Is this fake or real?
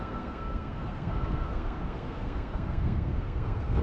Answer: fake